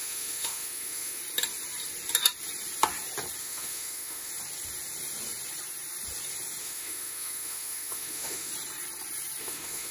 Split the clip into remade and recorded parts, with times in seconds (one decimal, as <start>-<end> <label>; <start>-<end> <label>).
0.0-1.2 remade; 1.2-3.4 recorded; 3.4-4.3 remade; 4.3-6.6 recorded; 6.6-8.5 remade; 8.5-9.4 recorded; 9.4-9.9 remade